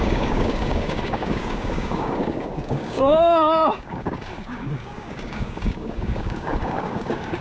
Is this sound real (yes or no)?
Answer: no